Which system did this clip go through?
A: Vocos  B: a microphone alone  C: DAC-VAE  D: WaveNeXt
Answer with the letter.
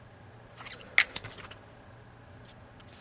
B